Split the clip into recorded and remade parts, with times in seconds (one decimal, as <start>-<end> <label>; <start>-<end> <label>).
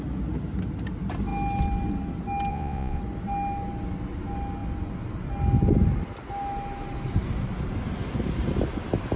0.0-2.5 recorded; 2.5-3.0 remade; 3.0-9.2 recorded